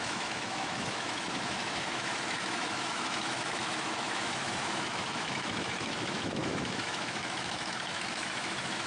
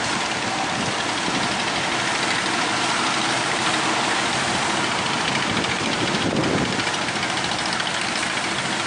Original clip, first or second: second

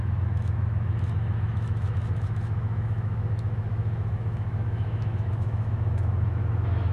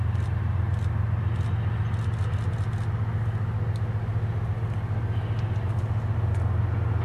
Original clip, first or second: second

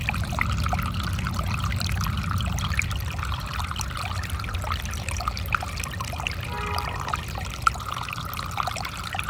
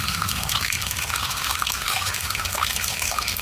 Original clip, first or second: first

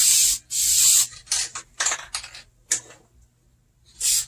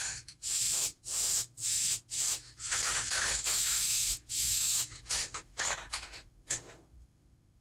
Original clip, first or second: first